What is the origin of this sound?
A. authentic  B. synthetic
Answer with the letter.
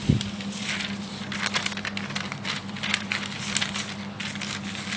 A